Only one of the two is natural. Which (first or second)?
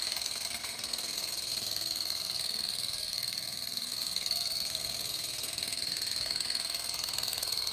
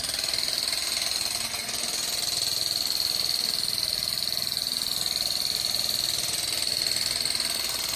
second